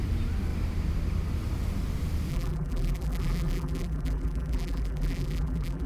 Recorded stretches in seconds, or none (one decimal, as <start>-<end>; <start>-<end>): 0.0-2.3